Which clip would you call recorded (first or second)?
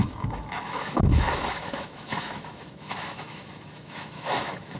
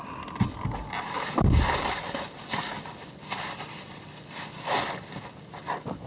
second